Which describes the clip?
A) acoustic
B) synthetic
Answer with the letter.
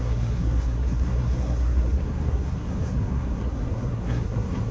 B